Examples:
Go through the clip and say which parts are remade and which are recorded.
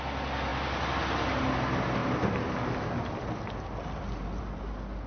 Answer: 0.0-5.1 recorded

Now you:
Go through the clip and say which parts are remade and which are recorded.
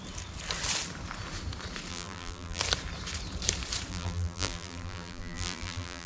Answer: 0.0-1.9 recorded; 1.9-2.6 remade; 2.6-3.9 recorded; 3.9-6.1 remade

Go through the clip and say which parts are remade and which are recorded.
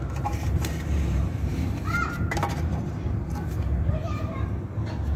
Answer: 0.0-5.2 remade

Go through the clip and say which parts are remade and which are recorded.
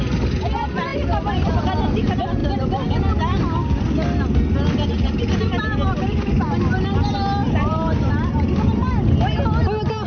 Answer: 0.0-0.9 recorded; 0.9-1.5 remade; 1.5-7.4 recorded; 7.4-8.1 remade; 8.1-10.1 recorded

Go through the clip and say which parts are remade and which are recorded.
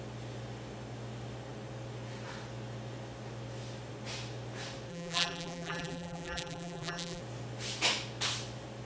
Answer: 0.0-4.9 recorded; 4.9-7.2 remade; 7.2-8.8 recorded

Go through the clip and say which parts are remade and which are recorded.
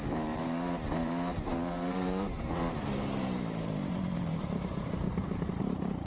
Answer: 0.0-6.1 remade